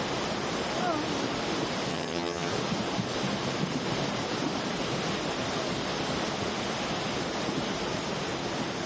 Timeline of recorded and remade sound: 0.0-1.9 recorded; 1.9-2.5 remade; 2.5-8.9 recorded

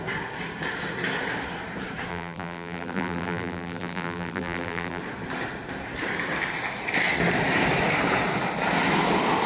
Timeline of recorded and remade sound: 0.0-2.1 recorded; 2.1-5.0 remade; 5.0-9.5 recorded

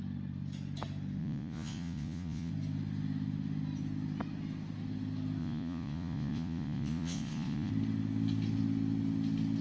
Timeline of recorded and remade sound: 0.0-1.2 recorded; 1.2-2.5 remade; 2.5-5.4 recorded; 5.4-7.7 remade; 7.7-9.6 recorded

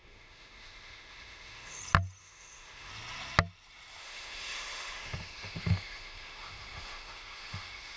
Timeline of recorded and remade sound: 0.0-1.8 remade; 1.8-2.2 recorded; 2.2-2.9 remade; 2.9-4.0 recorded; 4.0-8.0 remade

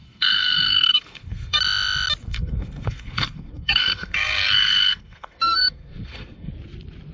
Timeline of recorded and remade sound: 0.0-1.6 remade; 1.6-2.2 recorded; 2.2-6.5 remade; 6.5-7.1 recorded

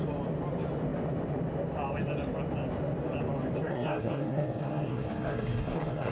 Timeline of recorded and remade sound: 0.0-3.7 recorded; 3.7-6.1 remade

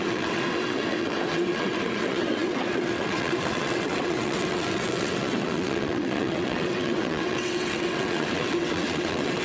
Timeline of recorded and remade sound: 0.0-9.4 remade

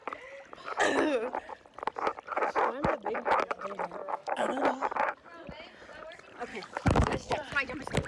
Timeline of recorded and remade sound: 0.0-4.0 recorded; 4.0-4.5 remade; 4.5-6.5 recorded; 6.5-7.3 remade; 7.3-8.1 recorded